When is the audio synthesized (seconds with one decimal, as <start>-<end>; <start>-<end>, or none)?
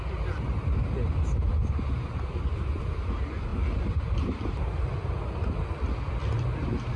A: none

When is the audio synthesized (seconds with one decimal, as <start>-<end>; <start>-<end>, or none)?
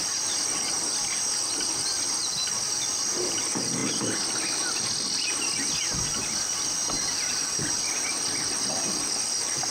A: none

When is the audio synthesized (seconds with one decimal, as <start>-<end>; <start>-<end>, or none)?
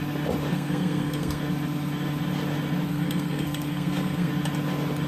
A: 0.5-1.4; 2.9-4.3